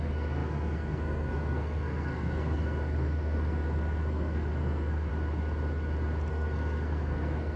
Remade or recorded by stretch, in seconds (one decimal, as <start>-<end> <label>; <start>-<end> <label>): 0.0-5.1 remade; 5.1-6.3 recorded; 6.3-7.6 remade